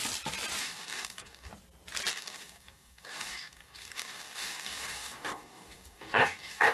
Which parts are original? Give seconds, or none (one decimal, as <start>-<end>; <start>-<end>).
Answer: 0.0-0.6; 1.5-2.1